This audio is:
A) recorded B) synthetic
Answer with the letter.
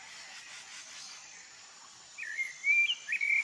A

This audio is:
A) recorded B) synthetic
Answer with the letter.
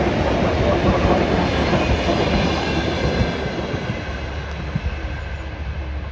A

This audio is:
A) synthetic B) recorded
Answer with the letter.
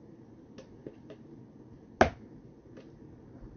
B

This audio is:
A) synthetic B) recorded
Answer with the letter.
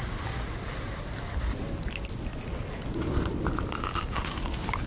B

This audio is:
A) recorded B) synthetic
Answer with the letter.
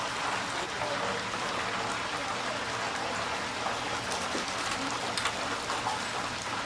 A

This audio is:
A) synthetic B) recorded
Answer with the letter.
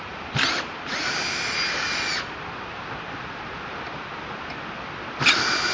B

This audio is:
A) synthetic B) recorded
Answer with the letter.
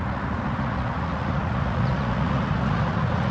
A